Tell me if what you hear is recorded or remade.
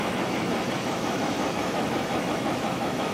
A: remade